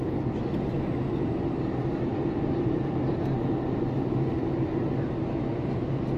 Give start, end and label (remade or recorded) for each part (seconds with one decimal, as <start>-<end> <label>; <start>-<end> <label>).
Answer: 0.0-6.2 recorded

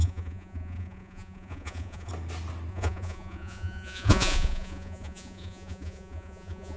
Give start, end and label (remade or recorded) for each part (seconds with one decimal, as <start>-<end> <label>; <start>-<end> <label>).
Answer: 0.0-2.1 remade; 2.1-2.7 recorded; 2.7-6.8 remade

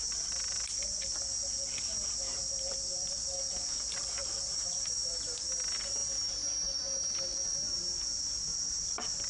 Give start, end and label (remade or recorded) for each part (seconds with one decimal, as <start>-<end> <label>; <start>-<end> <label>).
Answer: 0.0-2.3 recorded; 2.3-3.3 remade; 3.3-4.2 recorded; 4.2-5.1 remade; 5.1-9.3 recorded

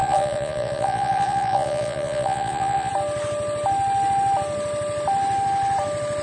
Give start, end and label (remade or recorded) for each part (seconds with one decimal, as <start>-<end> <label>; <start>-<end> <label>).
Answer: 0.0-2.9 remade; 2.9-6.2 recorded